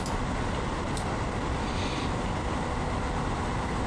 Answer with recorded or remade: recorded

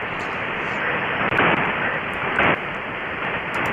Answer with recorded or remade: remade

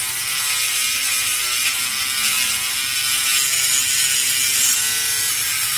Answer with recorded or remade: recorded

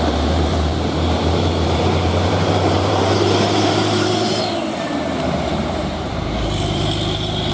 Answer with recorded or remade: remade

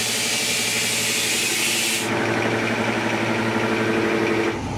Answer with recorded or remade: recorded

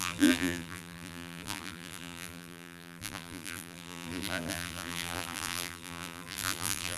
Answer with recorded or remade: remade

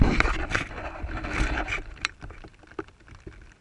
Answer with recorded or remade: remade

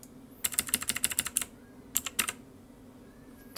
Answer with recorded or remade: recorded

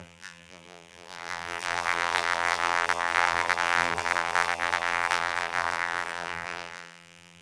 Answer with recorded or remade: remade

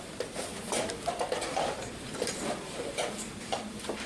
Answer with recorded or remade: remade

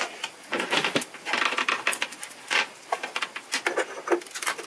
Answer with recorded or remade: recorded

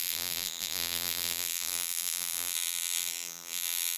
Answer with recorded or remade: remade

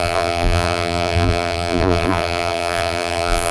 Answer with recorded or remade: remade